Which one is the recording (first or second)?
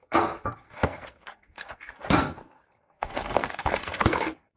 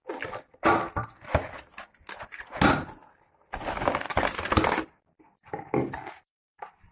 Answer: second